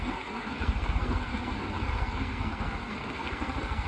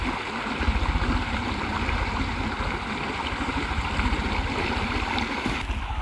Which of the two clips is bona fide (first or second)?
second